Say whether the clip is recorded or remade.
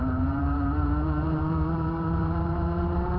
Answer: remade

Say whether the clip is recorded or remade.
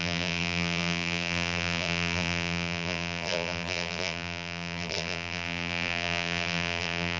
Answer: remade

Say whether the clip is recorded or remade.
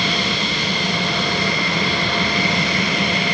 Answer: remade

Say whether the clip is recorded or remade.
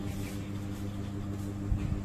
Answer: recorded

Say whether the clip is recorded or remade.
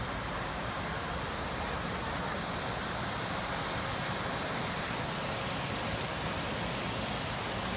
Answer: recorded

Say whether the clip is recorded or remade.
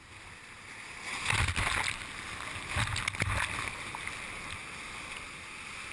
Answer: recorded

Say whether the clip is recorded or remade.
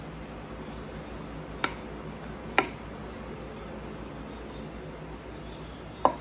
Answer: recorded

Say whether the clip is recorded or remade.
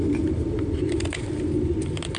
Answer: recorded